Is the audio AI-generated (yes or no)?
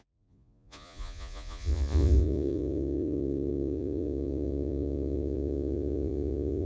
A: yes